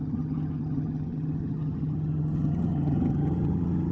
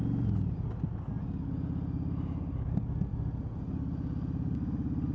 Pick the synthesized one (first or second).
first